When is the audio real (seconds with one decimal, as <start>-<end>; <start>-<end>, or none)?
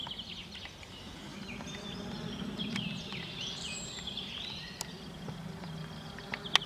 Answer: 0.0-1.3; 5.3-6.7